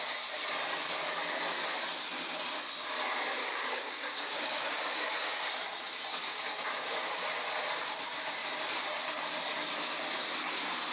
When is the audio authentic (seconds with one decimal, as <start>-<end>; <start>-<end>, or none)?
0.0-3.4; 5.5-6.3; 7.3-10.9